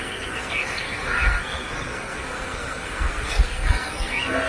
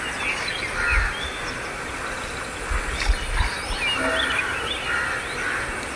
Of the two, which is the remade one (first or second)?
first